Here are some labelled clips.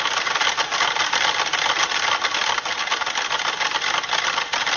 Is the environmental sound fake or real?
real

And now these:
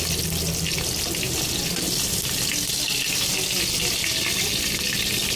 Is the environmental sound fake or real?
real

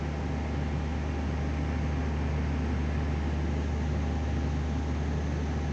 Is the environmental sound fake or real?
real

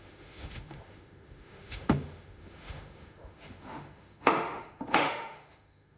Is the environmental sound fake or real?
fake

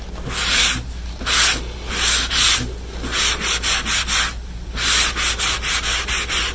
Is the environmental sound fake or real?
real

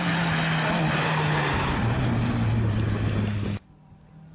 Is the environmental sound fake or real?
real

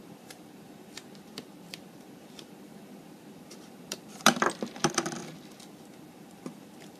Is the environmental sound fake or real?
fake